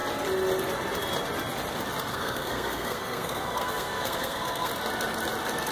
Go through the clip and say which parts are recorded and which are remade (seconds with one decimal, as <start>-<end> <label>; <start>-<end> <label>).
0.0-2.1 recorded; 2.1-4.7 remade; 4.7-5.7 recorded